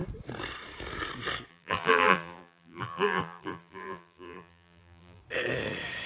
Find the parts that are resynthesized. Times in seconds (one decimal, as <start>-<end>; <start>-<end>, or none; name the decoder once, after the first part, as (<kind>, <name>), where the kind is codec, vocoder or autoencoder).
1.5-5.2 (vocoder, BigVGAN v2)